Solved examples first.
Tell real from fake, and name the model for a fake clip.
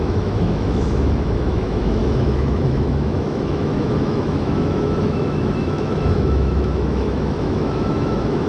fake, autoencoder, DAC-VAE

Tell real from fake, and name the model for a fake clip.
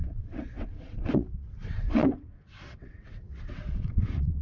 fake, vocoder, WaveNeXt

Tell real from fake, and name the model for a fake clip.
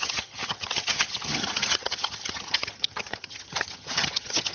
fake, vocoder, HiFi-GAN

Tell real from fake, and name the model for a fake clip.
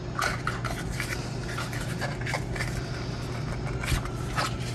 real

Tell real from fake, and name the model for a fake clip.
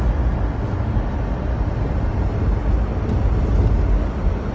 real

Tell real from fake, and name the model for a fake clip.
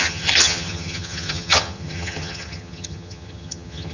fake, vocoder, HiFi-GAN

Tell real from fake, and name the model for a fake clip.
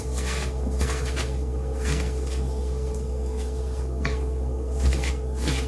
fake, codec, SNAC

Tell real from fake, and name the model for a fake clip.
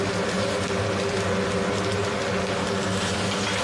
real